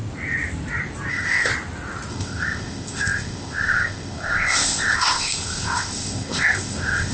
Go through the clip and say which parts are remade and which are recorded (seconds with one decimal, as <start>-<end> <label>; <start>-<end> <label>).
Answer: 0.0-1.1 recorded; 1.1-1.5 remade; 1.5-2.1 recorded; 2.1-7.1 remade